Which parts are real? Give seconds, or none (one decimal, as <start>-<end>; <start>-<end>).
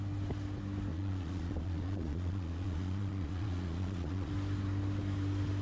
0.0-0.9; 4.3-5.6